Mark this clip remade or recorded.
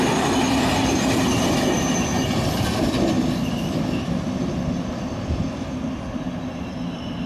recorded